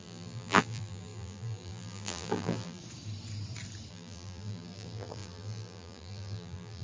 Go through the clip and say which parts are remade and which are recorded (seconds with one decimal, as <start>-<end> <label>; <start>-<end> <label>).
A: 0.0-2.8 remade; 2.8-3.9 recorded; 3.9-6.8 remade